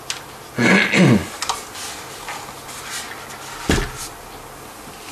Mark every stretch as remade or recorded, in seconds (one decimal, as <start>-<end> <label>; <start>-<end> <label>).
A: 0.0-5.1 recorded